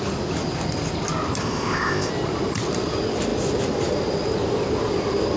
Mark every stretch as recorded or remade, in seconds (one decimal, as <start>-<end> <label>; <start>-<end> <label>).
0.0-1.4 recorded; 1.4-2.1 remade; 2.1-5.4 recorded

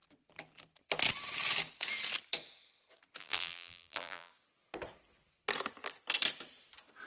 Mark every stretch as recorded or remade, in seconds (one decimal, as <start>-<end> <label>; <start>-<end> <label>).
0.0-3.2 recorded; 3.2-4.3 remade; 4.3-7.1 recorded

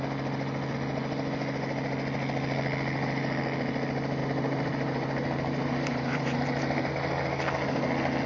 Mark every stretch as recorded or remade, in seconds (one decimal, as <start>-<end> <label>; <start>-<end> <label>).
0.0-4.2 recorded; 4.2-6.9 remade; 6.9-8.3 recorded

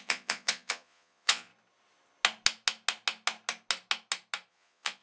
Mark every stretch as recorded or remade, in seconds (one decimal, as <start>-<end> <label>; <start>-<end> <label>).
0.0-1.5 remade; 1.5-4.5 recorded; 4.5-5.0 remade

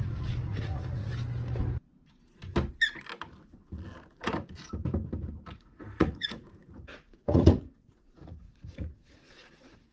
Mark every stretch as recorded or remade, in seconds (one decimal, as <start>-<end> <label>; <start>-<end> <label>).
0.0-1.1 remade; 1.1-5.5 recorded; 5.5-9.9 remade